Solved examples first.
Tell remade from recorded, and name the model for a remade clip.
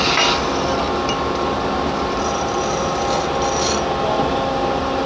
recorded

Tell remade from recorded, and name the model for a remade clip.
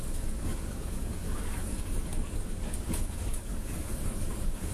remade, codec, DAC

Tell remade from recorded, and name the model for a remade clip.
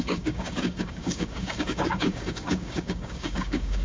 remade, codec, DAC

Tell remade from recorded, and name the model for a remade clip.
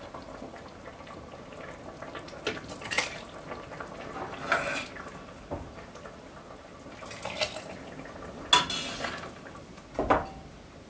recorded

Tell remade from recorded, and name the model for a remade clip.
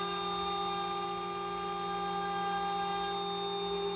recorded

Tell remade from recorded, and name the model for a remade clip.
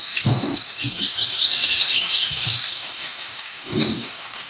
remade, codec, DAC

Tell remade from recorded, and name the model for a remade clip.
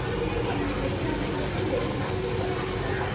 recorded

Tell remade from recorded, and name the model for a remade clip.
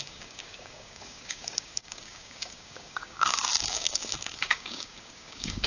remade, codec, DAC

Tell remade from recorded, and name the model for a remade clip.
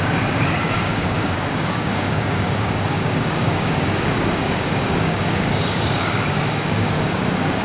remade, codec, DAC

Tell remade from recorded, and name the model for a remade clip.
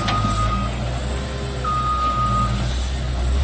recorded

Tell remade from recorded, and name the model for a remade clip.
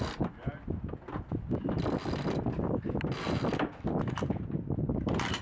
recorded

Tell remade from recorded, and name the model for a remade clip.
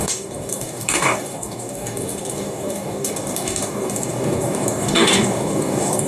remade, codec, DAC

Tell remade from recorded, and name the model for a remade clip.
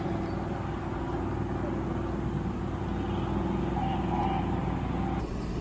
recorded